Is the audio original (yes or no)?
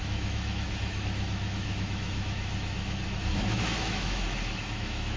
no